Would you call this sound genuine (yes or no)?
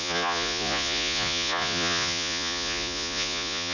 no